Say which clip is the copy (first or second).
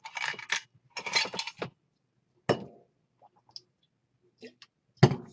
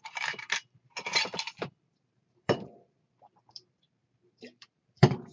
second